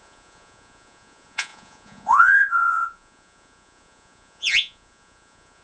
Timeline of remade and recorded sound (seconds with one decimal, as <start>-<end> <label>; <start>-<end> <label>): 0.0-5.6 remade